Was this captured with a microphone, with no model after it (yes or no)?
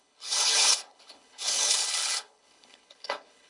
no